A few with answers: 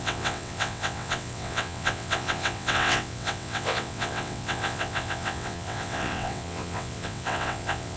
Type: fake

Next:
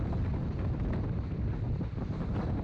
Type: fake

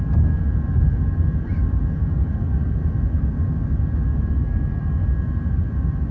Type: real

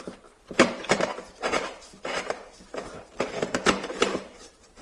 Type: fake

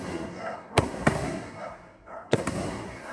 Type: fake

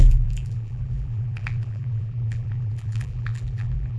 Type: fake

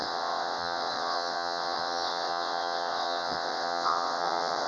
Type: fake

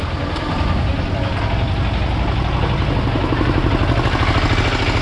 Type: real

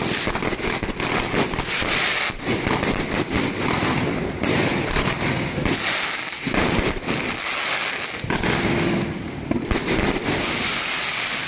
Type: real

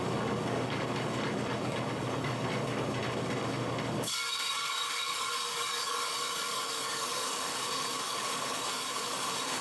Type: fake